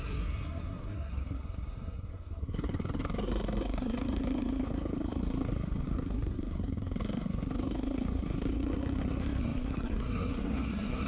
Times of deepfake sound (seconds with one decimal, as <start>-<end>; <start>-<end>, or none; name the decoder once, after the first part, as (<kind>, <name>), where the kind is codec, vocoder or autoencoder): 0.0-11.1 (codec, SNAC)

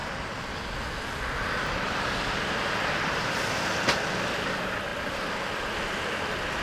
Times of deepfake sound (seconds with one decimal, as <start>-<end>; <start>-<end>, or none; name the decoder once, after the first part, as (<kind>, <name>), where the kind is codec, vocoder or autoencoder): none